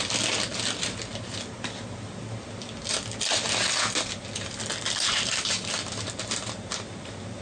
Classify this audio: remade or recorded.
recorded